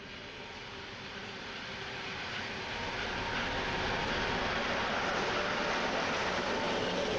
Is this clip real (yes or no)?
yes